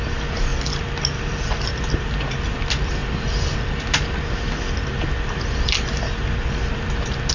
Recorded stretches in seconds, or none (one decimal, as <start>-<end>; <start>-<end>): 0.0-7.3